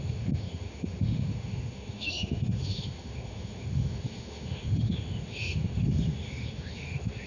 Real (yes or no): no